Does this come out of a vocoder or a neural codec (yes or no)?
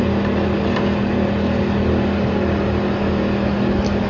no